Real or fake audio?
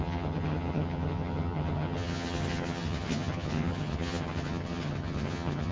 fake